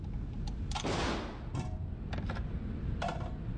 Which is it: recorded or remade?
recorded